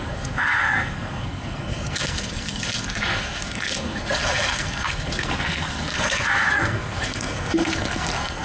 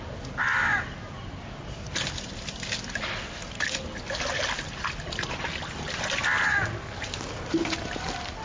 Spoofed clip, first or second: first